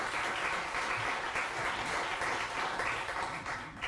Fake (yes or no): no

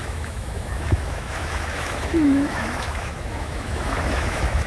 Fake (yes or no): yes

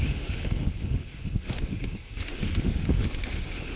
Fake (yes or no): yes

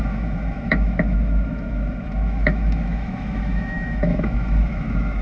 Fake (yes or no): yes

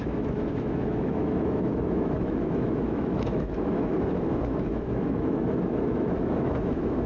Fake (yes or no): yes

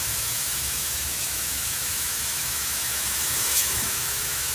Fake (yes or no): yes